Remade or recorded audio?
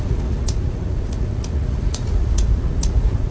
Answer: remade